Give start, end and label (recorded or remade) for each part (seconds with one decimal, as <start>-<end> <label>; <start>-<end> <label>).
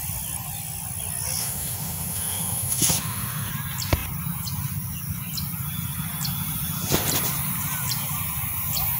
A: 0.0-1.4 recorded; 1.4-3.5 remade; 3.5-9.0 recorded